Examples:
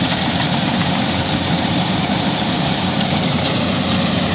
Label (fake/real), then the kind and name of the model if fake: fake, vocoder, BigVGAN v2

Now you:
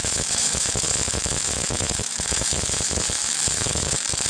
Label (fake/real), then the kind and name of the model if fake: fake, autoencoder, DAC-VAE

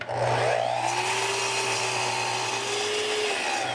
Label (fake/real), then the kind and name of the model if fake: real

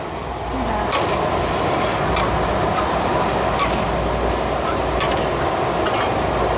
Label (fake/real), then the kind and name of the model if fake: real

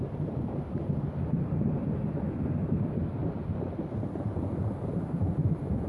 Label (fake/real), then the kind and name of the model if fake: real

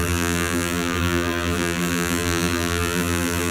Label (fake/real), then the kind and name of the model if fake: fake, vocoder, BigVGAN v2